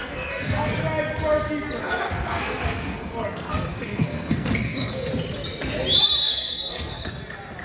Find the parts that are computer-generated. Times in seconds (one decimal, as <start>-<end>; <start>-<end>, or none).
0.0-0.8; 1.8-5.1; 6.2-7.1

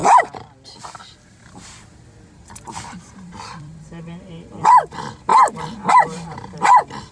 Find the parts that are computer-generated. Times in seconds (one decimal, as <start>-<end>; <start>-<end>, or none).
0.0-4.3; 5.3-6.6

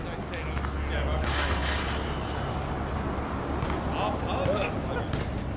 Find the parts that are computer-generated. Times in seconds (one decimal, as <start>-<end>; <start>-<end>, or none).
none

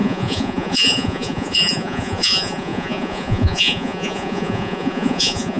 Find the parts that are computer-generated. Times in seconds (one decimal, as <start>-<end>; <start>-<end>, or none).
0.0-5.6

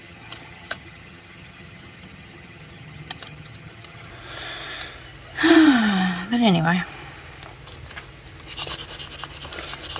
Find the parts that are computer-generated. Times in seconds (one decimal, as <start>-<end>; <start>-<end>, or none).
0.0-4.1

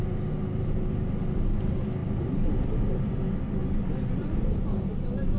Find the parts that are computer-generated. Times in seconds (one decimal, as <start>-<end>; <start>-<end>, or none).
none